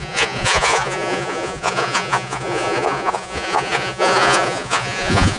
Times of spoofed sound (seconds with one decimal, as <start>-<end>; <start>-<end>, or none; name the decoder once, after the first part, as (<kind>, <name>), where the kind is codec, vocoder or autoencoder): 0.0-5.4 (vocoder, Vocos)